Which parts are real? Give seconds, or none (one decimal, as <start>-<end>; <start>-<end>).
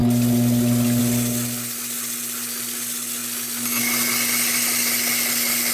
0.0-5.7